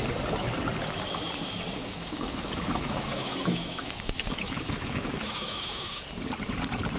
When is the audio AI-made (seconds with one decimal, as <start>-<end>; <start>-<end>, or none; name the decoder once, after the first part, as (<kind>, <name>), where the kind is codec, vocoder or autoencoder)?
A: 1.8-6.0 (autoencoder, DAC-VAE)